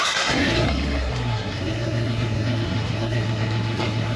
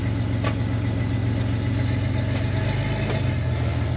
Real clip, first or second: second